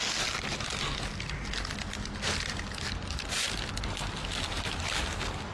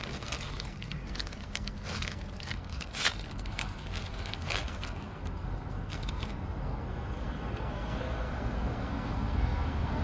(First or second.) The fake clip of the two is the second